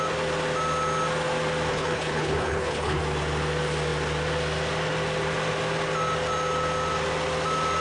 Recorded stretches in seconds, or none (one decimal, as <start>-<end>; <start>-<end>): 0.0-1.7; 3.0-7.8

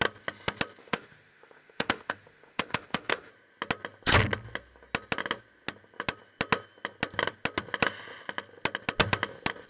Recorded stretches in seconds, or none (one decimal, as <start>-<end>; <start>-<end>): 0.0-0.8; 3.3-9.7

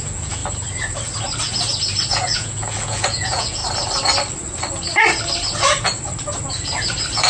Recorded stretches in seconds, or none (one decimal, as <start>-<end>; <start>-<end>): 0.4-2.1; 3.6-7.3

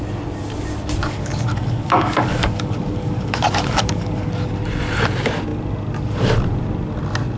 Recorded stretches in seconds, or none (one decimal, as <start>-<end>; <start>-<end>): 0.0-1.0; 4.3-7.4

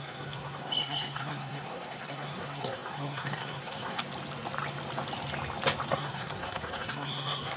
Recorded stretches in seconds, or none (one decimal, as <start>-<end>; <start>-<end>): 4.0-5.9

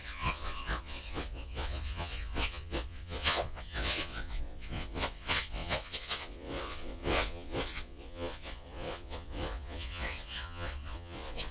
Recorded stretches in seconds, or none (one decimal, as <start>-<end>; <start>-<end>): none

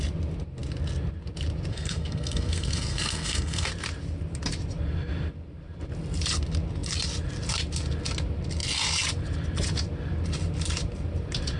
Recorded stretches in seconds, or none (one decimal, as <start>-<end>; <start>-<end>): 0.0-1.7; 3.7-11.6